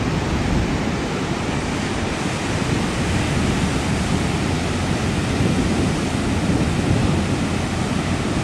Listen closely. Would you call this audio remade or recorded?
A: recorded